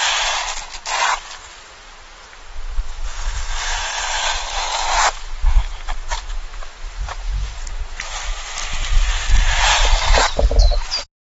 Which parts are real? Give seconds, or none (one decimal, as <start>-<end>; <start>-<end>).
0.0-11.3